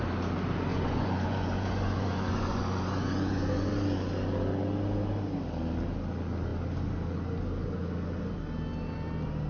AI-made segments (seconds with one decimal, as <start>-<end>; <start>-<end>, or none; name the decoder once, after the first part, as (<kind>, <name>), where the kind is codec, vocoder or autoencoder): 0.7-3.7 (vocoder, Vocos)